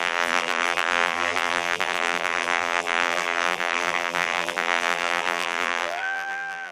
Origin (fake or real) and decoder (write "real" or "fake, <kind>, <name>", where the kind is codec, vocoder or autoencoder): fake, vocoder, BigVGAN v2